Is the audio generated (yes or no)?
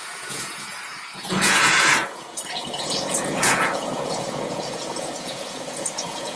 yes